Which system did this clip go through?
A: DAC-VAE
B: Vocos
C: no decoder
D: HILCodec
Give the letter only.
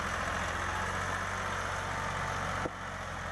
C